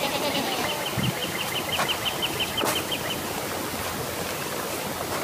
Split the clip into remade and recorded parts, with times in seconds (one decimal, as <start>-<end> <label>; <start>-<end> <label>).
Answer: 0.0-5.2 recorded